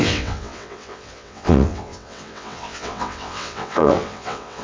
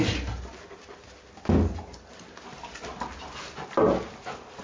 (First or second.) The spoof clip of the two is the first